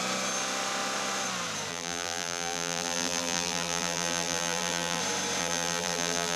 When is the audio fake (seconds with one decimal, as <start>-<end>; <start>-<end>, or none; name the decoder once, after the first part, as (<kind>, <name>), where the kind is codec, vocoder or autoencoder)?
1.7-5.0 (vocoder, BigVGAN v2); 5.4-6.4